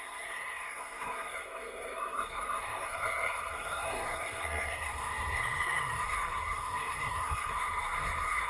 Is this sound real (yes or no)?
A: no